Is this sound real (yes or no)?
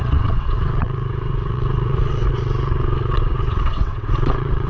no